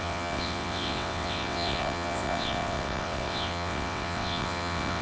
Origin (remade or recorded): remade